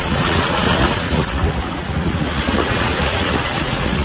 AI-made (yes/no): yes